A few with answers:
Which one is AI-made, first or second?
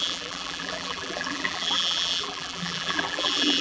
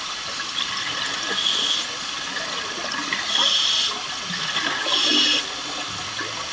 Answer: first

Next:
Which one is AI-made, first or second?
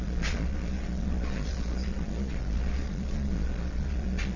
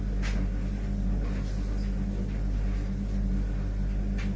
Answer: first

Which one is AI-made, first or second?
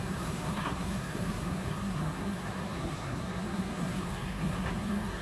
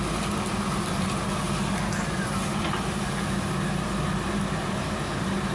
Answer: first